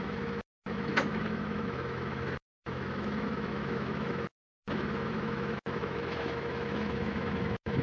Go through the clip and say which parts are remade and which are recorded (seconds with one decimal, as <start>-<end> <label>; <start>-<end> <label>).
0.0-7.8 remade